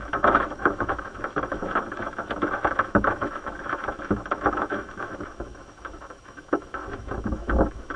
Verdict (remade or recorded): remade